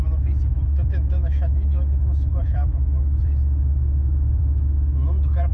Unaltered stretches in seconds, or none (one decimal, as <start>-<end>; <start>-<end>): none